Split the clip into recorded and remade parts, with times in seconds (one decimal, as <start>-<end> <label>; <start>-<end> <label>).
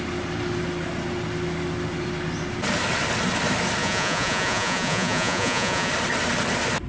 0.0-3.8 recorded; 3.8-5.9 remade; 5.9-6.9 recorded